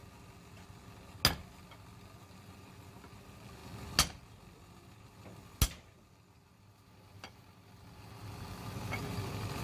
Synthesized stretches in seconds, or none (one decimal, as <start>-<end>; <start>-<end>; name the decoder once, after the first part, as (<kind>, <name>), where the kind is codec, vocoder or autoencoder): none